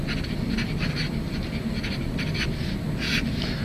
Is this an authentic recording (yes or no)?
yes